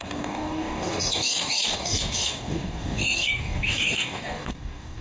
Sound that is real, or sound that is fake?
fake